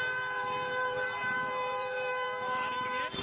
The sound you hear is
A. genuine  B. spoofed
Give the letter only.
B